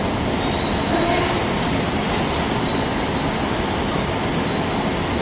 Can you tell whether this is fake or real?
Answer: real